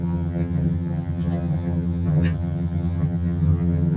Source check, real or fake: fake